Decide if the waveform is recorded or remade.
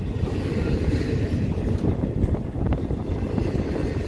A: recorded